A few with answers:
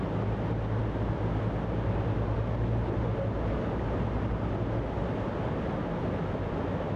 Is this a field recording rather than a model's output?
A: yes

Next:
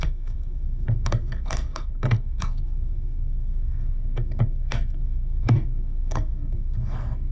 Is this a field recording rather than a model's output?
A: no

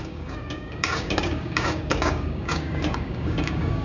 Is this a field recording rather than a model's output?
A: no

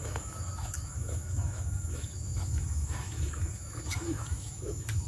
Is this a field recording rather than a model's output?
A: no